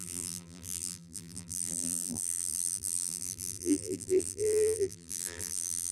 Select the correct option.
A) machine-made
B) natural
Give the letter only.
A